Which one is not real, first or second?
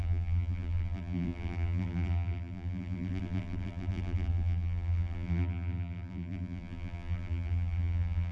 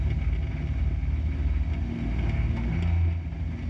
first